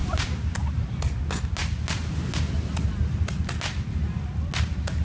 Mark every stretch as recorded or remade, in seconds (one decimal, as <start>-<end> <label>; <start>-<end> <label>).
0.0-0.5 remade; 0.5-5.0 recorded